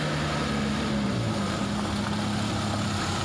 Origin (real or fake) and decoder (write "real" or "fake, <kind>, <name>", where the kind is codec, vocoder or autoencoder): real